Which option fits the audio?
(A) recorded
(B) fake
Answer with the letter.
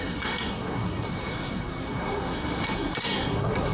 B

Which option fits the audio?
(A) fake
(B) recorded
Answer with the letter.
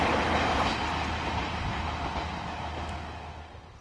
B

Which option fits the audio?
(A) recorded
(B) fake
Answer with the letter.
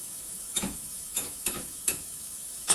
B